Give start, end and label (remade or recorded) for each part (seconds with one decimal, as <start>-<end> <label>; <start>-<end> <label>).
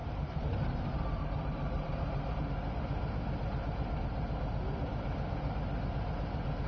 0.0-2.3 remade; 2.3-6.7 recorded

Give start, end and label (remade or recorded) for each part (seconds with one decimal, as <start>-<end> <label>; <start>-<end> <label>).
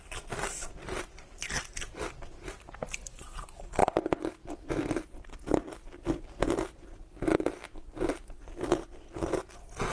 0.0-9.9 recorded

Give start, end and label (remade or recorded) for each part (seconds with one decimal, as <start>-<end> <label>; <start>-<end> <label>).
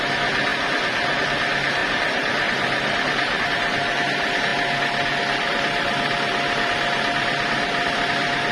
0.0-1.8 recorded; 1.8-3.4 remade; 3.4-8.5 recorded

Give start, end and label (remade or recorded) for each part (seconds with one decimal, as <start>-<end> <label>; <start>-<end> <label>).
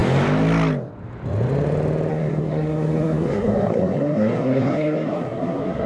0.0-2.1 recorded; 2.1-5.9 remade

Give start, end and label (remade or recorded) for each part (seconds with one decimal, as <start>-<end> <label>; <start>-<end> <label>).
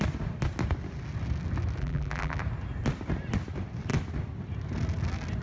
0.0-1.8 recorded; 1.8-2.4 remade; 2.4-5.4 recorded